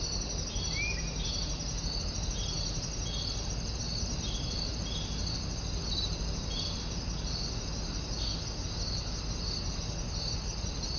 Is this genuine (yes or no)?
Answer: yes